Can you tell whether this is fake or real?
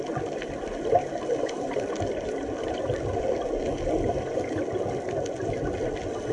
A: real